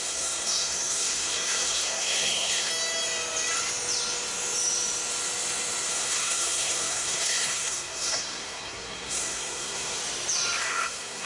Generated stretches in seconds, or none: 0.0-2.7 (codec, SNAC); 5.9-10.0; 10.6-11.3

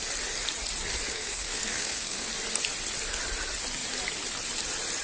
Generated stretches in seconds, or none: 1.1-2.3 (codec, SNAC)

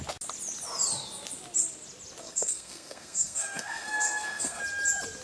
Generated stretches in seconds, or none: 2.2-4.6 (codec, SNAC)

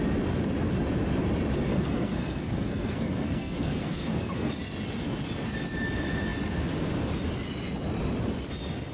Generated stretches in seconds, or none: 1.7-4.5 (codec, SNAC)

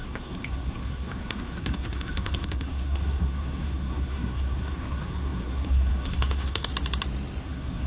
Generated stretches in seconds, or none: 0.0-6.7 (codec, SNAC); 7.4-7.9

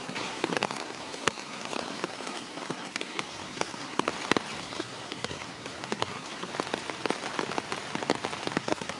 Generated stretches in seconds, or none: 0.0-4.1 (codec, SNAC); 4.6-6.5; 8.6-9.0